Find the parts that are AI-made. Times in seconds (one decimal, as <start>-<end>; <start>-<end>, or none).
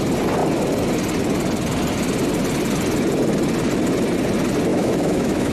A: 4.7-5.5